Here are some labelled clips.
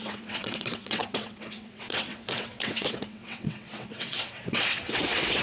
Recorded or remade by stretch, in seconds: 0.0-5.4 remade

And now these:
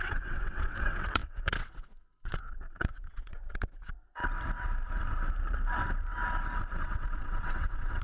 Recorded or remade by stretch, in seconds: 0.0-4.2 remade; 4.2-6.8 recorded; 6.8-8.0 remade

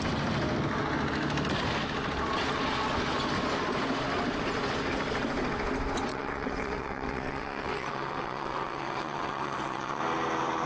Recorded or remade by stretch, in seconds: 0.0-6.1 recorded; 6.1-10.0 remade; 10.0-10.7 recorded

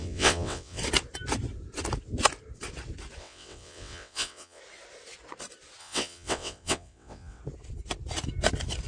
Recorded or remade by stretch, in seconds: 0.0-0.8 remade; 0.8-3.2 recorded; 3.2-4.6 remade; 4.6-5.8 recorded; 5.8-7.4 remade; 7.4-8.9 recorded

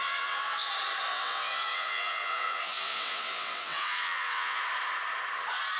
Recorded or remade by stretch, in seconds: 0.0-0.7 remade; 0.7-1.1 recorded; 1.1-4.6 remade; 4.6-5.8 recorded

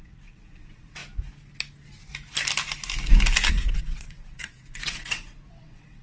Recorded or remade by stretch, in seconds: 0.0-1.0 remade; 1.0-3.5 recorded; 3.5-6.0 remade